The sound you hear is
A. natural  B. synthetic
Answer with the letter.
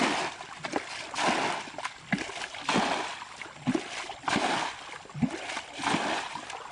A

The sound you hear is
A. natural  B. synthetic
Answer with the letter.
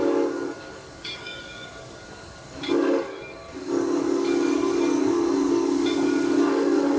B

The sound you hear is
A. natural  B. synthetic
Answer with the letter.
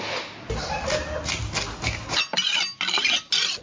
A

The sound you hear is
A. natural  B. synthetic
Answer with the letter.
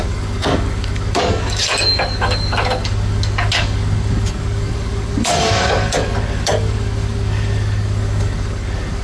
B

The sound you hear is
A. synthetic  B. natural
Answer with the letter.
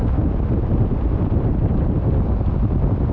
B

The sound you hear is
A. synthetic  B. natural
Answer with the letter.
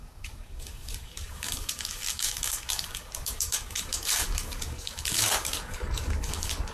A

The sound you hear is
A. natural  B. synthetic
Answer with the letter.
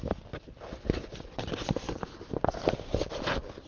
A